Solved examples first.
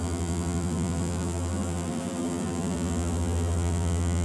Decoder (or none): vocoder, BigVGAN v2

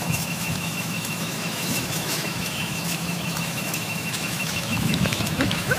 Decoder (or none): autoencoder, DAC-VAE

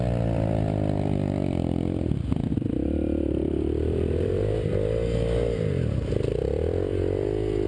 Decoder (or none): vocoder, BigVGAN v2